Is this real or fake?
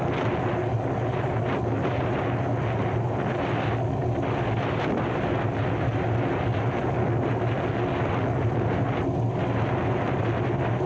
real